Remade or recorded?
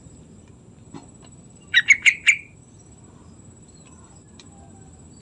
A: remade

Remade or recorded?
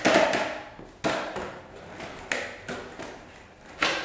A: recorded